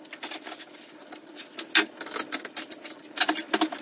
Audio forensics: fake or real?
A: real